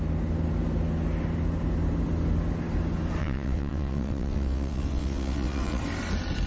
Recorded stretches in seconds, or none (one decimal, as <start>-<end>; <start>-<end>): 0.0-3.2; 5.8-6.5